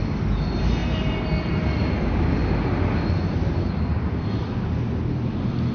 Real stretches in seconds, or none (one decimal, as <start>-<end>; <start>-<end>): 0.0-5.7